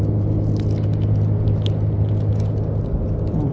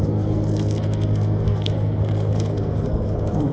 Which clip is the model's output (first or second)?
second